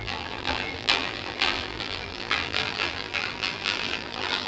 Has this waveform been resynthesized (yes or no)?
yes